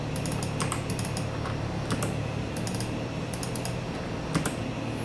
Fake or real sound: real